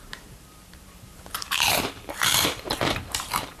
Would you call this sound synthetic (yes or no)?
yes